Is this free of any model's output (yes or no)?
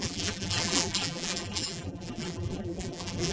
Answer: no